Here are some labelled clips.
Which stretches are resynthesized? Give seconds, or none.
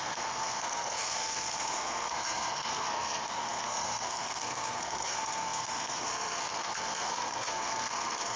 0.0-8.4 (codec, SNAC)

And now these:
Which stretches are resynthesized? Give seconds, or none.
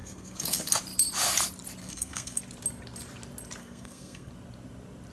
0.0-0.7 (codec, SNAC); 1.8-2.4; 3.6-4.3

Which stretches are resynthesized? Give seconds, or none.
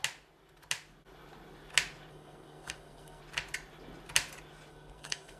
2.1-3.2 (codec, SNAC); 4.7-5.4